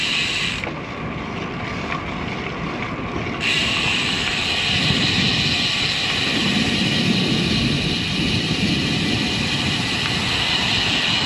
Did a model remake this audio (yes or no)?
no